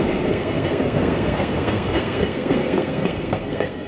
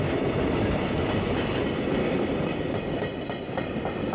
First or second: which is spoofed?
first